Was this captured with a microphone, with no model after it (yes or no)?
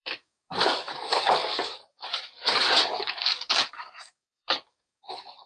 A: no